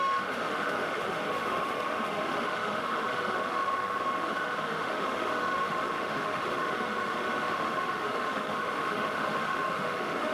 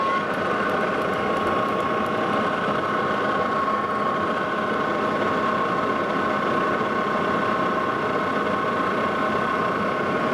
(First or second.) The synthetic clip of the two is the first